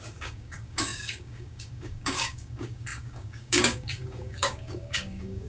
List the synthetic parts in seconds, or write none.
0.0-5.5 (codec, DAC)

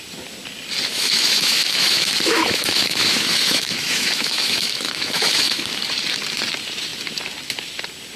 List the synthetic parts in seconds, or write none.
0.9-5.8 (autoencoder, DAC-VAE)